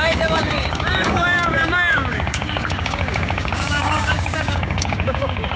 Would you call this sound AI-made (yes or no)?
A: yes